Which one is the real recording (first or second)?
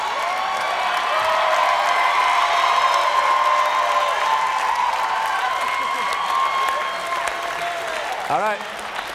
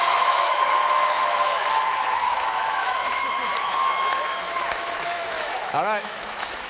first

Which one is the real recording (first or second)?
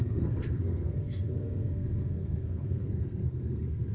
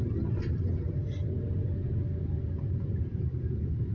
second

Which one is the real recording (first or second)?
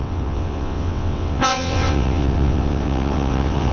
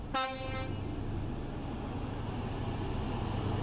second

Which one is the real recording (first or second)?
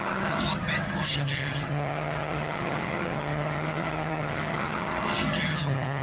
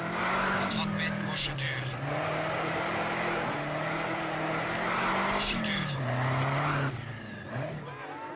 second